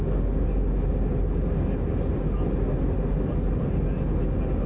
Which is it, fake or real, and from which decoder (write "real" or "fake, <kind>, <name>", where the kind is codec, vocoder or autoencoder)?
real